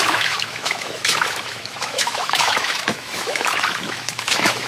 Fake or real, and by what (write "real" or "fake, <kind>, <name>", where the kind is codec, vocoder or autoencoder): fake, autoencoder, DAC-VAE